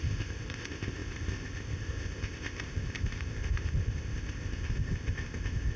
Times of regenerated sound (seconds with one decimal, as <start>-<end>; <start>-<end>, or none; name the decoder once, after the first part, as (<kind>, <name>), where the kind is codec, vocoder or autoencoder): 0.0-5.8 (codec, ZipCodec)